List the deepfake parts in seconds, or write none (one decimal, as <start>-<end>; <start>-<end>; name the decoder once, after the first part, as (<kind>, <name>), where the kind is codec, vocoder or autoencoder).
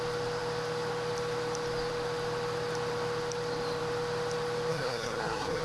4.7-5.6 (codec, SNAC)